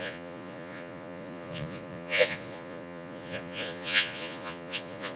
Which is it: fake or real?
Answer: fake